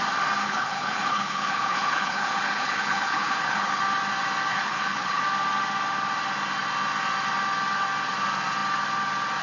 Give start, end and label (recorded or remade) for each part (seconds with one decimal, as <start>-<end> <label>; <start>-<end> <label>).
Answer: 0.0-0.4 recorded; 0.4-3.8 remade; 3.8-4.5 recorded; 4.5-5.2 remade; 5.2-9.4 recorded